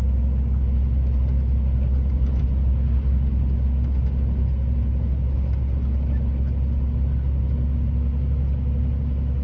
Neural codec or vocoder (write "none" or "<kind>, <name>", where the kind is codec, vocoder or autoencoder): none